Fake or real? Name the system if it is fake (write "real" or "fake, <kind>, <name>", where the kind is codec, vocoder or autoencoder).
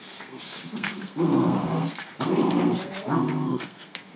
fake, codec, SNAC